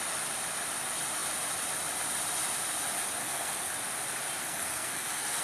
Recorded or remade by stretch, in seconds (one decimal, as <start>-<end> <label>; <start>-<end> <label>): 0.0-3.2 recorded; 3.2-3.7 remade; 3.7-4.4 recorded; 4.4-5.4 remade

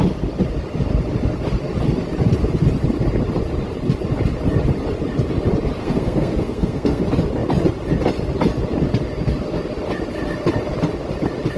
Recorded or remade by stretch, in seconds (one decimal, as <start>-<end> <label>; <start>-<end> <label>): 0.0-5.8 recorded; 5.8-7.0 remade; 7.0-11.6 recorded

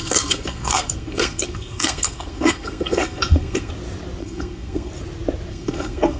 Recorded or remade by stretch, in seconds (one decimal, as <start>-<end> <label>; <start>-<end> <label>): 0.0-3.7 remade; 3.7-4.2 recorded; 4.2-4.9 remade; 4.9-5.5 recorded; 5.5-6.2 remade

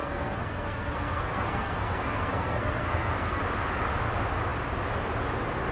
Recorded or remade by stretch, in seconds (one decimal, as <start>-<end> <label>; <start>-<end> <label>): 0.0-3.4 remade; 3.4-5.7 recorded

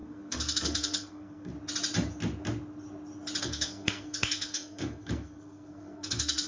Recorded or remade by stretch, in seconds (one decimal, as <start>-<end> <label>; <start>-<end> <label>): 0.0-1.5 remade; 1.5-3.4 recorded; 3.4-6.5 remade

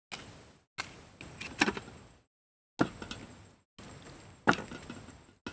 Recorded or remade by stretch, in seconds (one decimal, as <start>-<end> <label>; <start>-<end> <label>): 0.0-5.5 recorded

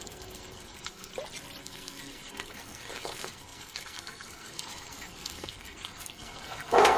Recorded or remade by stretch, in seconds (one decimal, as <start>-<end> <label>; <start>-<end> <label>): 0.0-1.1 remade; 1.1-1.6 recorded; 1.6-7.0 remade